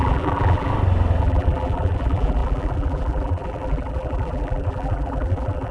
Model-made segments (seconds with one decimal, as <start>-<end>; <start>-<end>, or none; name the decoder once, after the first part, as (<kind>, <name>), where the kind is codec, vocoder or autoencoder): 0.0-0.7 (vocoder, BigVGAN v2); 1.2-5.7